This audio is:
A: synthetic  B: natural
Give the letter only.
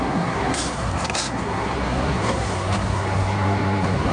A